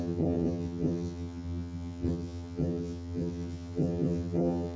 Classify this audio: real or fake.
fake